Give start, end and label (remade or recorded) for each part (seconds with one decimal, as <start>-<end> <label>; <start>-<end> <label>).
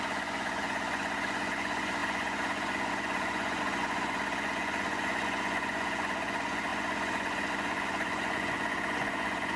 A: 0.0-9.6 remade